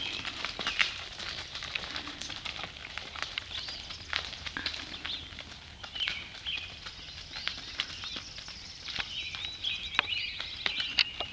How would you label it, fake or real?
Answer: real